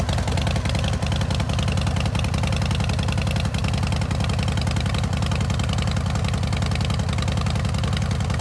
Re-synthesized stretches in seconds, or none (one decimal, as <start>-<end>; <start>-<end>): none